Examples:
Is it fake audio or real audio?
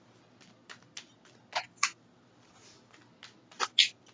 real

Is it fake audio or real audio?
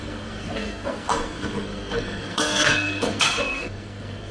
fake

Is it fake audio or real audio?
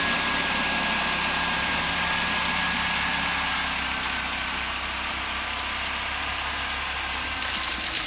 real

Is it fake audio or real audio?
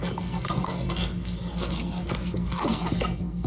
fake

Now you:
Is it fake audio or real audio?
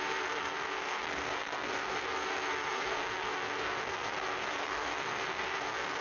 fake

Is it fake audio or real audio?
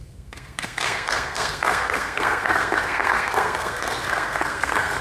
fake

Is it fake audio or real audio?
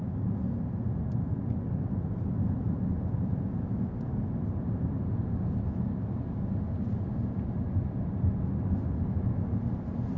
real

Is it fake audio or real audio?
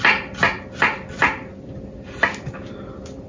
real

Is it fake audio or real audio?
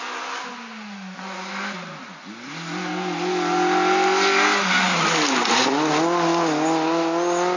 real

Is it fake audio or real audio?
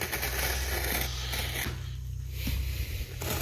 real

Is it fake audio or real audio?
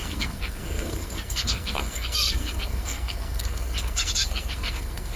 fake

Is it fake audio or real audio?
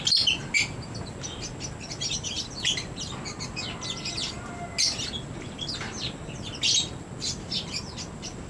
real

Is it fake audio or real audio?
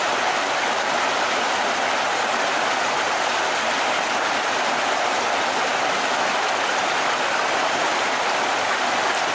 real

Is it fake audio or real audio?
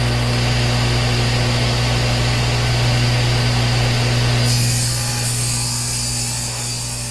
real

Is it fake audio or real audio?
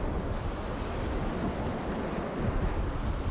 real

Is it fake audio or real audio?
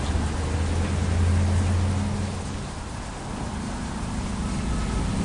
real